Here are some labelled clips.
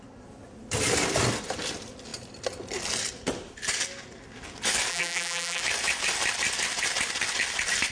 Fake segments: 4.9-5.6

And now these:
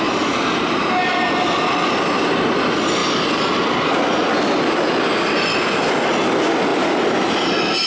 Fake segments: 3.0-5.1; 6.7-7.3

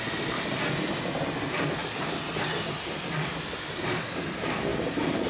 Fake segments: 1.8-4.0; 4.7-5.3

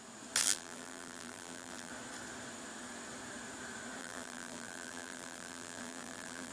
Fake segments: 0.4-1.9; 4.0-6.5

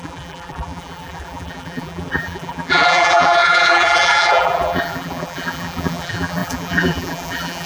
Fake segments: 0.0-7.7

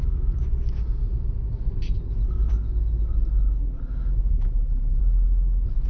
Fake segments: 4.3-5.0

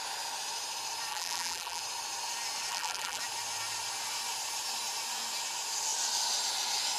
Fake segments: 1.1-1.8; 2.7-3.2

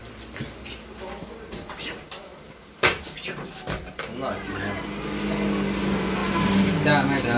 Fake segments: 0.0-0.7